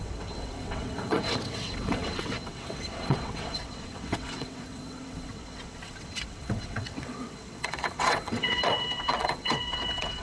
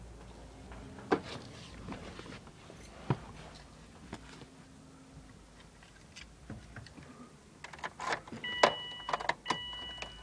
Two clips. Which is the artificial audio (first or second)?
first